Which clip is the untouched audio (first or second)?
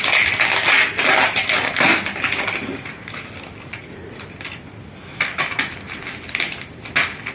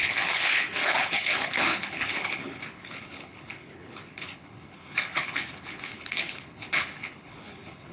first